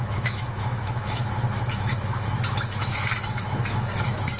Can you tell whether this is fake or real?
fake